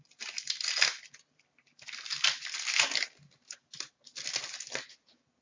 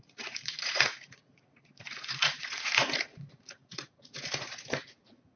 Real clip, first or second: first